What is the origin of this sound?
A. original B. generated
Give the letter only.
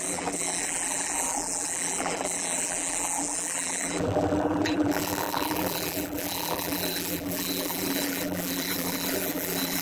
B